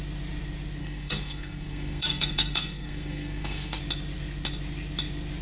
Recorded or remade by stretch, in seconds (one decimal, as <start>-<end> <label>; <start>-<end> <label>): 0.0-0.8 recorded; 0.8-3.8 remade; 3.8-5.4 recorded